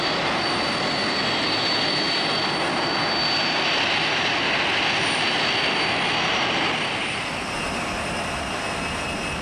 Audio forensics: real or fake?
real